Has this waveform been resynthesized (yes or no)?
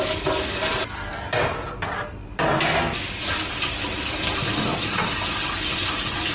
no